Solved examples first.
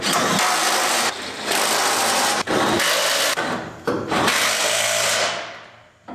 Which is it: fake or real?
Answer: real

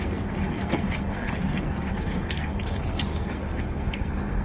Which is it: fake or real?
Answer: fake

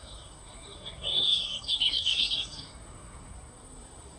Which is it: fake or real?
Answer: fake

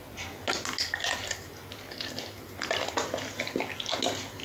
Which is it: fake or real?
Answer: real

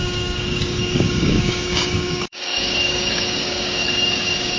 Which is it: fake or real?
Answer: fake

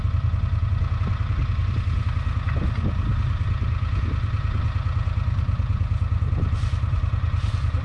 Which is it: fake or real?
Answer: real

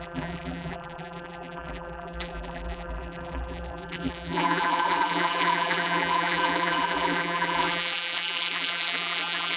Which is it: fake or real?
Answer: fake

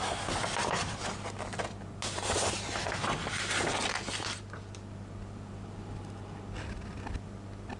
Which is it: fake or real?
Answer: real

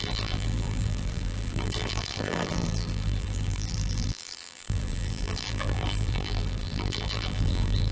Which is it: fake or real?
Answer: fake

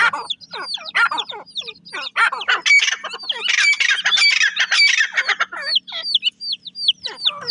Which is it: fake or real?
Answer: real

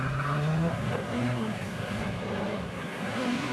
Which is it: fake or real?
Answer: fake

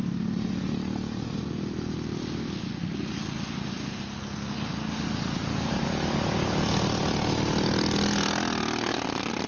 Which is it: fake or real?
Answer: real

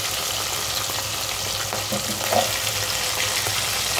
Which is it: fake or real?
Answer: real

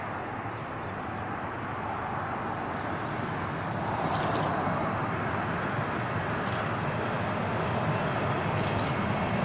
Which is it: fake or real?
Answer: real